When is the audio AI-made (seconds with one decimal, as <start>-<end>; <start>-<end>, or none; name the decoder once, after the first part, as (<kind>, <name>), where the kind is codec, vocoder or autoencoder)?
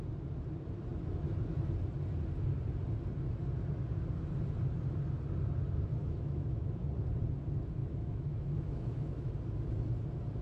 6.0-6.9 (autoencoder, DAC-VAE); 7.8-9.3